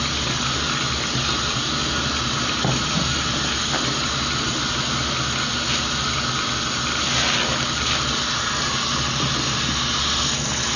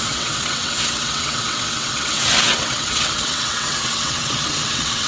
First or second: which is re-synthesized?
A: second